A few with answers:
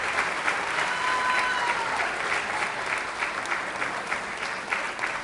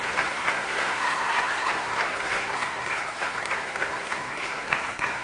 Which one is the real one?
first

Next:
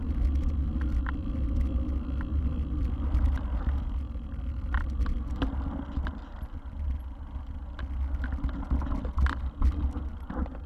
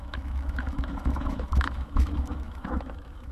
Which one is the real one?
first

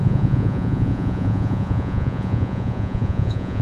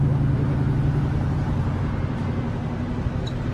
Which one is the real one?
second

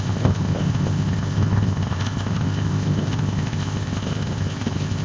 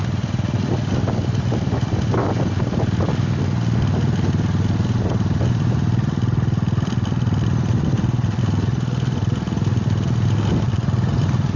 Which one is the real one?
second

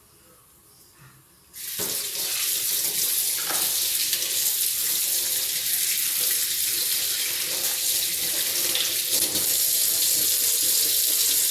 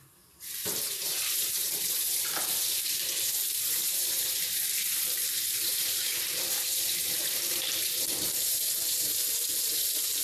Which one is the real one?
first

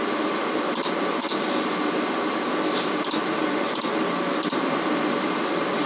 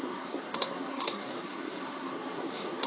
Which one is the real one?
first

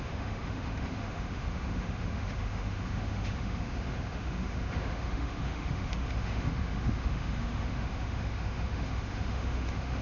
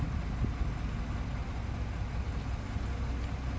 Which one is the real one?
second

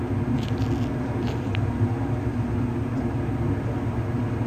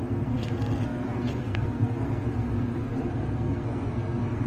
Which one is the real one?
first